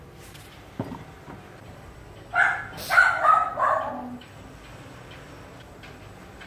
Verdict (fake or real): real